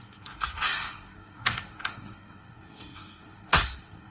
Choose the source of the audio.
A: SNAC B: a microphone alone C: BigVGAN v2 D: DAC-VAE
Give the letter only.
A